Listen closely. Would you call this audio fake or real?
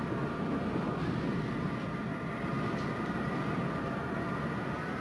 real